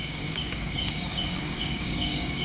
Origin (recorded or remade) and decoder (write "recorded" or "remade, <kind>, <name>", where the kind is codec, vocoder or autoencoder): remade, codec, DAC